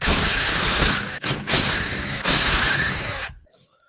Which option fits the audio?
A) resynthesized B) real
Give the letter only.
A